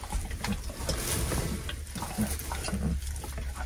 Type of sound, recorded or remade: recorded